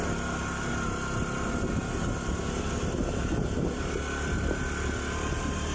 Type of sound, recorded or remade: recorded